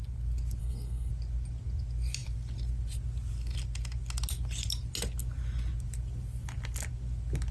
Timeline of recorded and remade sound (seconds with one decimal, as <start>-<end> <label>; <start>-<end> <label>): 0.0-0.6 recorded; 0.6-1.1 remade; 1.1-7.5 recorded